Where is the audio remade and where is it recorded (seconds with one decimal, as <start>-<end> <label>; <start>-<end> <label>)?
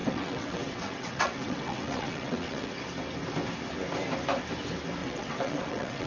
0.0-2.7 remade; 2.7-5.0 recorded; 5.0-6.1 remade